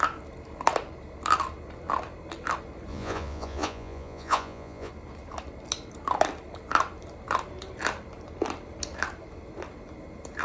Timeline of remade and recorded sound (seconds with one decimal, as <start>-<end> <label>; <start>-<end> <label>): 0.0-2.9 recorded; 2.9-4.9 remade; 4.9-10.4 recorded